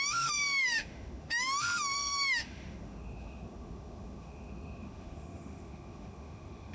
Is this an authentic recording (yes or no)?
no